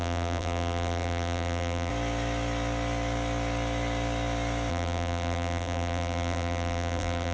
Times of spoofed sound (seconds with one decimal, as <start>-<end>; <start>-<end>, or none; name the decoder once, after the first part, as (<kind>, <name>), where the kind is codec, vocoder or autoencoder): 0.0-1.9 (vocoder, BigVGAN v2); 4.7-7.3